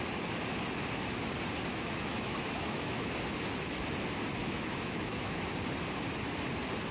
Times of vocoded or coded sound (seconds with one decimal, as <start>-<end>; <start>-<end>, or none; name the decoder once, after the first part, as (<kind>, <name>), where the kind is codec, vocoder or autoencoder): 1.7-3.1 (autoencoder, DAC-VAE); 4.4-5.4